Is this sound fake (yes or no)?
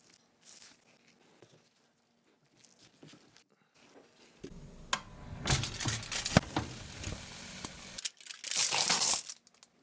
no